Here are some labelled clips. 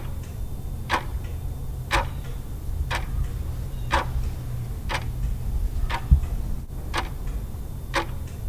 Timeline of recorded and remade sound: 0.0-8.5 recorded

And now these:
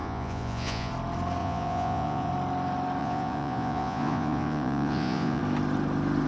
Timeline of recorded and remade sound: 0.0-0.9 remade; 0.9-1.4 recorded; 1.4-2.3 remade; 2.3-3.0 recorded; 3.0-5.4 remade; 5.4-6.3 recorded

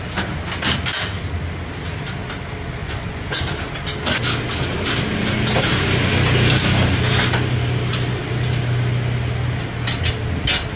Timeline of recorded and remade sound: 0.0-2.8 recorded; 2.8-3.4 remade; 3.4-10.8 recorded

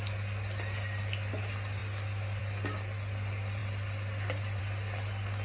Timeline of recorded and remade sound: 0.0-5.4 recorded

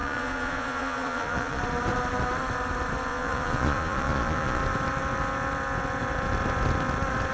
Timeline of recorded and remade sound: 0.0-1.6 remade; 1.6-3.1 recorded; 3.1-4.6 remade; 4.6-7.3 recorded

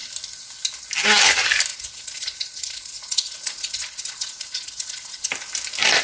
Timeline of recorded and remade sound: 0.0-1.7 recorded; 1.7-5.3 remade; 5.3-6.0 recorded

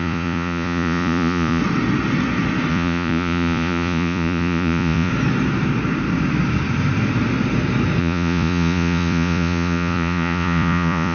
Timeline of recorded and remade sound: 0.0-1.6 remade; 1.6-2.7 recorded; 2.7-5.1 remade; 5.1-8.0 recorded; 8.0-11.1 remade